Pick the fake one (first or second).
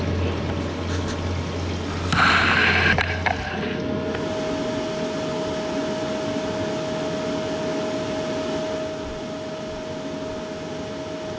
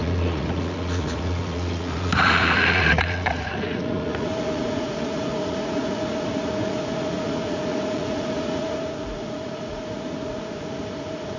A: second